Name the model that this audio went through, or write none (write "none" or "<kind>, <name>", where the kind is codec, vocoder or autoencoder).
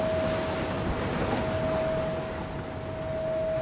none